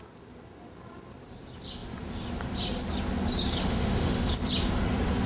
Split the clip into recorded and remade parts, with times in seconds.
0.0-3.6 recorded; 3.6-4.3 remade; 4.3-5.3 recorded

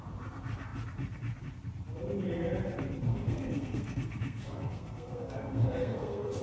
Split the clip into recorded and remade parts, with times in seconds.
0.0-3.1 recorded; 3.1-6.4 remade